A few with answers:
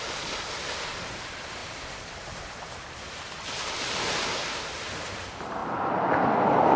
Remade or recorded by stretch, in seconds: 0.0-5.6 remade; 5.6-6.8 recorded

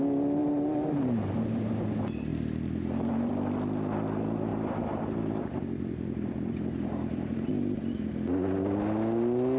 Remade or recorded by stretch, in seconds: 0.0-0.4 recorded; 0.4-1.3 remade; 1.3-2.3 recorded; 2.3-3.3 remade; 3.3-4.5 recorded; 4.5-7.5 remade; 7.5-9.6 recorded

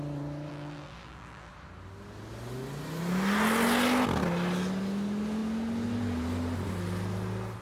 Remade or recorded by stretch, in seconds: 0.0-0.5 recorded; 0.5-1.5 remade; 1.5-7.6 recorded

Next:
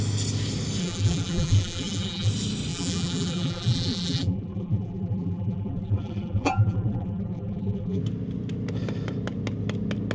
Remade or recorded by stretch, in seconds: 0.0-0.8 recorded; 0.8-2.3 remade; 2.3-2.7 recorded; 2.7-8.0 remade; 8.0-10.1 recorded

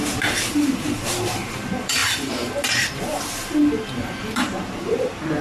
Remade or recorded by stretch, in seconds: 0.0-5.4 remade

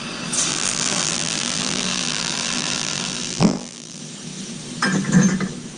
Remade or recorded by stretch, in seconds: 0.0-0.5 recorded; 0.5-4.0 remade; 4.0-5.8 recorded

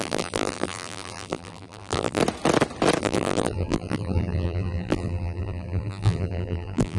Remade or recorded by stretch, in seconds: 0.0-2.2 remade; 2.2-3.0 recorded; 3.0-7.0 remade